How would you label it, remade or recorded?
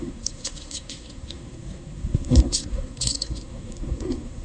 remade